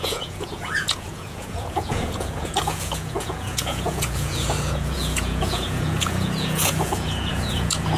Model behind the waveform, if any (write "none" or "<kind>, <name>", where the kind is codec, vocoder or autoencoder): vocoder, Vocos